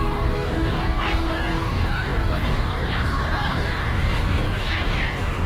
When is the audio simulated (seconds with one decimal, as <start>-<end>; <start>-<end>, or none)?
0.0-5.5